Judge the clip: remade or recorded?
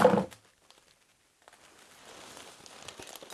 recorded